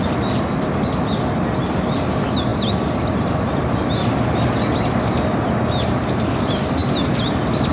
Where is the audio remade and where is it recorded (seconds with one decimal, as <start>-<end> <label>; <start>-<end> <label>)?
0.0-7.7 recorded